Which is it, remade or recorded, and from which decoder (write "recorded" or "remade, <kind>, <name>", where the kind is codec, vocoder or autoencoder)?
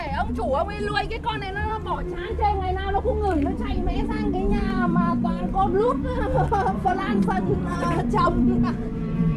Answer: remade, vocoder, BigVGAN v2